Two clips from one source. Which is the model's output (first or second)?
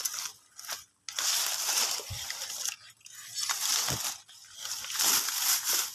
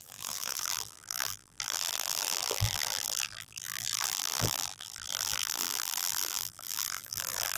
second